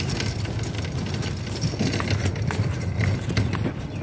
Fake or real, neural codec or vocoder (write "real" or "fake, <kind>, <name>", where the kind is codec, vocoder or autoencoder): real